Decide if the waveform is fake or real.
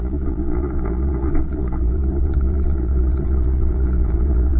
fake